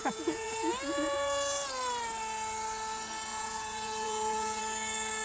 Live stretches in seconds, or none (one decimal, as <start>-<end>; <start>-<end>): 1.7-3.3; 4.6-5.2